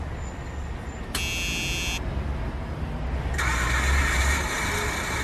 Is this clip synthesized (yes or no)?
no